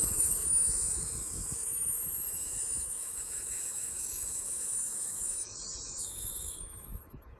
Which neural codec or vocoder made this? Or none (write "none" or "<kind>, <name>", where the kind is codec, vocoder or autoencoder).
autoencoder, DAC-VAE